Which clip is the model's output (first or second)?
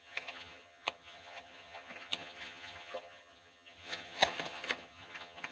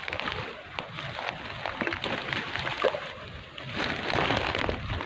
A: first